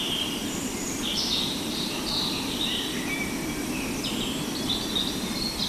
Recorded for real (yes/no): yes